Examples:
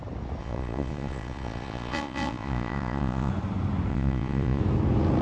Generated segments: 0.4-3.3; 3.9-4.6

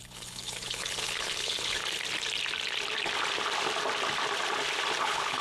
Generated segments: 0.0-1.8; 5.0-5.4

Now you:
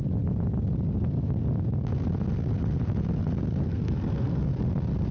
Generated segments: 3.6-4.5

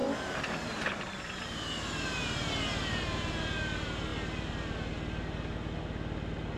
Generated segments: 0.0-2.5

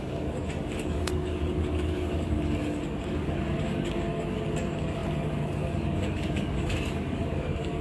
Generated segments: 0.0-7.8

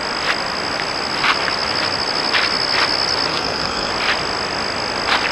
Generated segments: 3.3-3.9

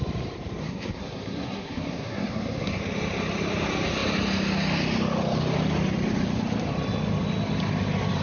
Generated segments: 0.6-2.8

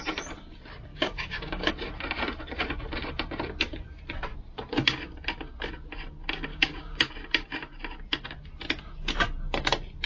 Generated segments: 0.9-1.7; 6.5-7.1